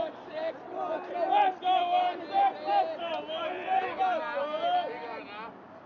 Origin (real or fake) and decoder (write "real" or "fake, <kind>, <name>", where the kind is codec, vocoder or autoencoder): real